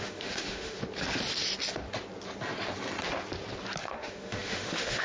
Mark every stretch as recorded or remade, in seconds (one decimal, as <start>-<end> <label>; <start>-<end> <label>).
0.0-0.8 remade; 0.8-3.8 recorded; 3.8-5.0 remade

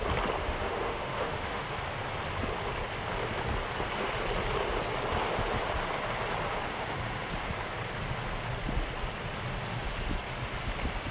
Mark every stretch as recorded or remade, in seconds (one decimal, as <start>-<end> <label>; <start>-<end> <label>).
0.0-0.4 recorded; 0.4-1.7 remade; 1.7-6.7 recorded; 6.7-7.3 remade; 7.3-11.1 recorded

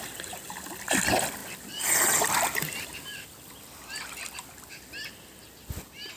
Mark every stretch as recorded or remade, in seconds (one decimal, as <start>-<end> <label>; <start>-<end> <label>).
0.0-6.2 recorded